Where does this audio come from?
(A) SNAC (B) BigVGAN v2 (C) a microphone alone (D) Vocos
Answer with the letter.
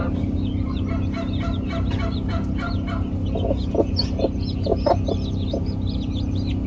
C